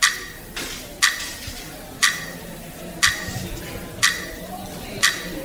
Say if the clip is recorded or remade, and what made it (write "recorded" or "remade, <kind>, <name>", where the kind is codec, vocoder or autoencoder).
recorded